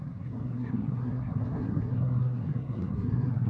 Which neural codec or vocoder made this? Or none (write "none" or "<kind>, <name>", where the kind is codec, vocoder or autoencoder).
codec, SNAC